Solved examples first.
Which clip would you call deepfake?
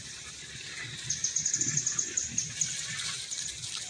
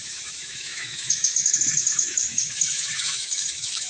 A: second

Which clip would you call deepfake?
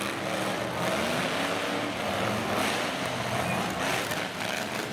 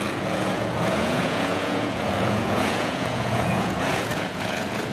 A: second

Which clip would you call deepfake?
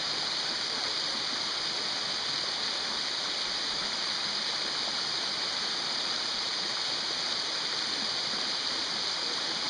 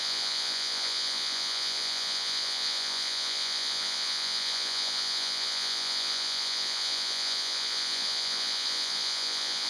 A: second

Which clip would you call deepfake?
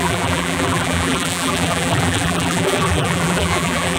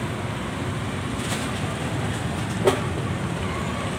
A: first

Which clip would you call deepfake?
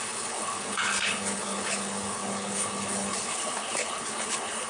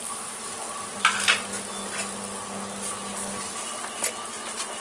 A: first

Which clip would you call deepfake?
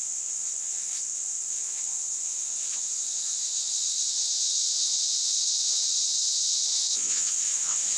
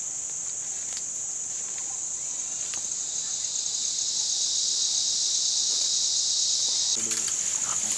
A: first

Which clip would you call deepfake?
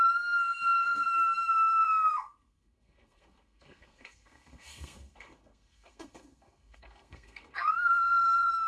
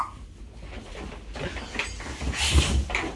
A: first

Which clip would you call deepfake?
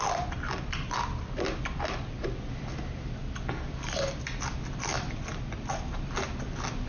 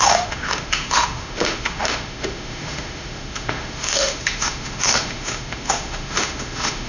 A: second